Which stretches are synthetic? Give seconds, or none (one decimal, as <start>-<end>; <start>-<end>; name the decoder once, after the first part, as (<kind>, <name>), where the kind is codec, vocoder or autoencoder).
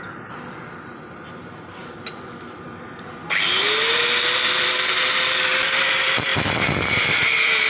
0.0-6.3 (vocoder, BigVGAN v2); 7.1-7.7